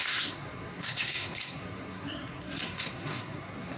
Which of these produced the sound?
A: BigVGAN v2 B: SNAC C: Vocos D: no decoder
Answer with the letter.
B